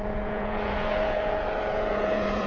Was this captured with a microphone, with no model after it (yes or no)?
no